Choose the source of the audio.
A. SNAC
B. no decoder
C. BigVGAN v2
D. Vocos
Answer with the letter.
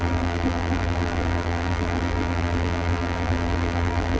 C